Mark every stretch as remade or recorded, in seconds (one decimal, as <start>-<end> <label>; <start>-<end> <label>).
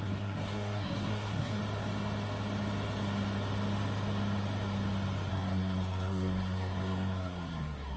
0.0-1.6 remade; 1.6-5.3 recorded; 5.3-8.0 remade